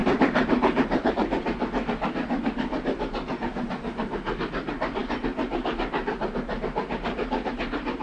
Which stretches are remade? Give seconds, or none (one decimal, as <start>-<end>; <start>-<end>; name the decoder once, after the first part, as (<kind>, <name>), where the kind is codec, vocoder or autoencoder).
0.0-1.1 (vocoder, BigVGAN v2)